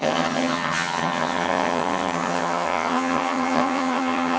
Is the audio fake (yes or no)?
yes